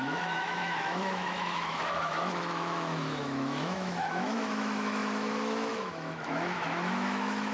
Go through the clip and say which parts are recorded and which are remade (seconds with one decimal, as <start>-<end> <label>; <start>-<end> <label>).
0.0-7.5 remade